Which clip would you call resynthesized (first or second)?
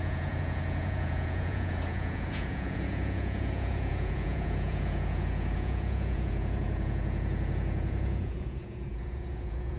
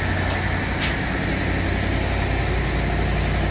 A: first